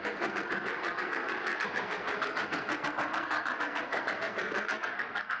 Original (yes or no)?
no